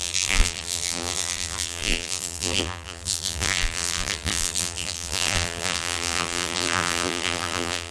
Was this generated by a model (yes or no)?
yes